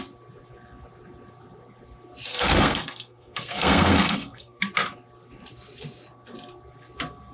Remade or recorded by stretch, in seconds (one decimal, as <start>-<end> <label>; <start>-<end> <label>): 0.0-2.3 recorded; 2.3-4.6 remade; 4.6-7.3 recorded